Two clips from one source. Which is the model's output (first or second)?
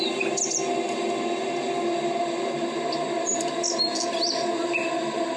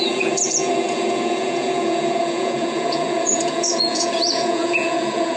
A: second